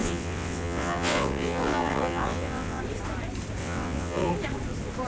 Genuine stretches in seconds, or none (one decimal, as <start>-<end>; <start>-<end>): 2.8-3.6; 4.3-5.1